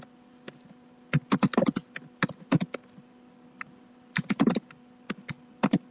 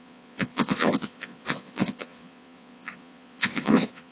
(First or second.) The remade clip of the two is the second